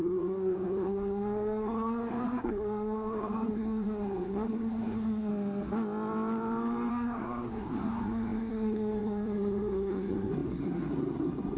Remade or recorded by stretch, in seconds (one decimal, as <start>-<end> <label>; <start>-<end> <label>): 0.0-5.3 remade; 5.3-6.9 recorded; 6.9-11.6 remade